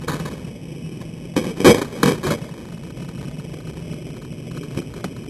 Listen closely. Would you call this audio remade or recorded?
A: recorded